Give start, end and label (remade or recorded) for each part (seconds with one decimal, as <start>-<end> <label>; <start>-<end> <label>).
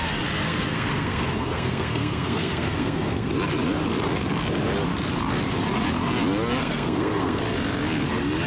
0.0-0.4 recorded; 0.4-3.3 remade; 3.3-6.6 recorded; 6.6-7.4 remade; 7.4-8.5 recorded